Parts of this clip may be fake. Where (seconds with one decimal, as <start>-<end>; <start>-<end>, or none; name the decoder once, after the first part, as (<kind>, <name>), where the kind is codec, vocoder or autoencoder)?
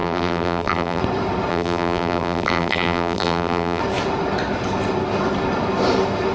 0.0-1.0 (vocoder, BigVGAN v2); 1.5-3.8